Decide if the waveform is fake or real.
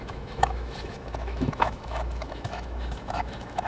fake